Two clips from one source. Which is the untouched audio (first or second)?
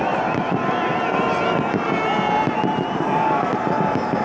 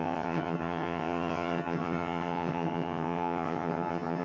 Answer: first